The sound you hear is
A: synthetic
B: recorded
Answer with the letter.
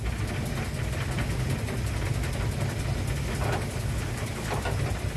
B